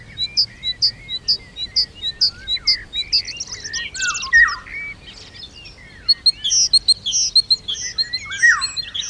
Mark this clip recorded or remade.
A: recorded